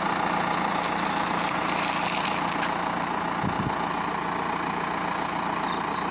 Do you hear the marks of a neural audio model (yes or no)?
no